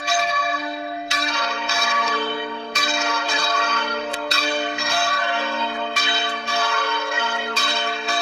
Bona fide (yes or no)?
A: no